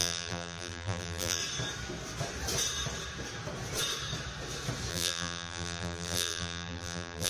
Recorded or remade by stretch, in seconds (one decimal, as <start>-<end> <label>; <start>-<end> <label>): 0.0-1.4 remade; 1.4-4.9 recorded; 4.9-7.3 remade